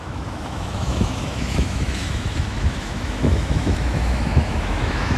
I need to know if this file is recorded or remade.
remade